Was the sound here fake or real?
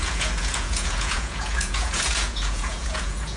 fake